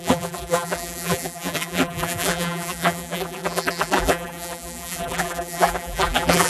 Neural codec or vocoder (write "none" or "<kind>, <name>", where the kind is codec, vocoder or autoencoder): vocoder, BigVGAN v2